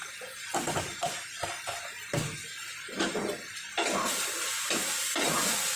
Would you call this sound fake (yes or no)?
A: yes